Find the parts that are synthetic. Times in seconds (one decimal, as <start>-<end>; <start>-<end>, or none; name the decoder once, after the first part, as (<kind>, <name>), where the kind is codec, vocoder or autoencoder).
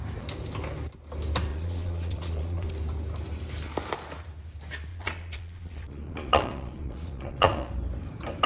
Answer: 1.5-2.7 (vocoder, Vocos); 4.9-7.7